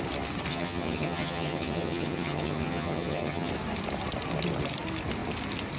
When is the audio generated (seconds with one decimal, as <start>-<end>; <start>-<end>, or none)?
0.5-3.5